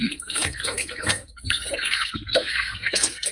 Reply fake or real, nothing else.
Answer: fake